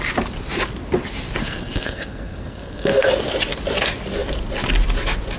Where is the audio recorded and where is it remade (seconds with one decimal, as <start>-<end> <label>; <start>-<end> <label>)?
0.0-1.4 recorded; 1.4-3.1 remade; 3.1-5.4 recorded